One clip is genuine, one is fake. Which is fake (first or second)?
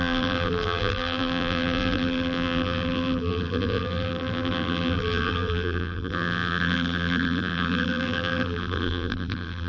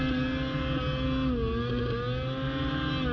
first